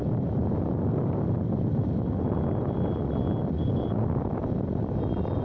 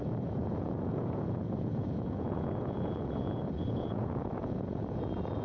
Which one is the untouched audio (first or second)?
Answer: first